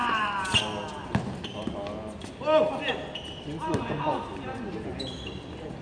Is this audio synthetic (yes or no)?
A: no